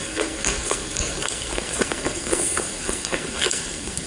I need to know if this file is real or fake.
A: fake